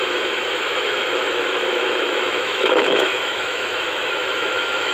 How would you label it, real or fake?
fake